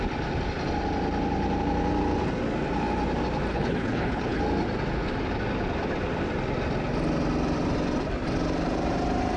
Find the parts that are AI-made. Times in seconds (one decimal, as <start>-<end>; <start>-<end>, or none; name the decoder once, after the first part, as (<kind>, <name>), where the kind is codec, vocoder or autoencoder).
3.5-4.4 (codec, HILCodec)